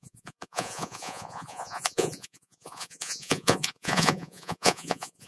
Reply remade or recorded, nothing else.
remade